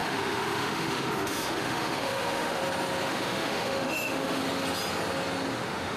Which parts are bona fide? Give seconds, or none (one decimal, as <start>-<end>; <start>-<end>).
2.6-3.1; 4.4-5.5